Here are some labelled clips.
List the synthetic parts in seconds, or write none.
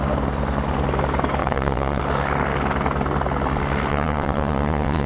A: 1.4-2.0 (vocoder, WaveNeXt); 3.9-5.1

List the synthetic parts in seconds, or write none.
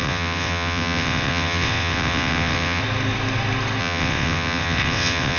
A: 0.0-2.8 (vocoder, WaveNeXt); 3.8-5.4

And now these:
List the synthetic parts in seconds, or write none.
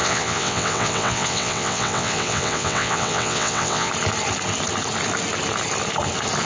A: 0.0-3.9 (vocoder, WaveNeXt)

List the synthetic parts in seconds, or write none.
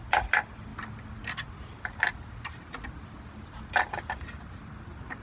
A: none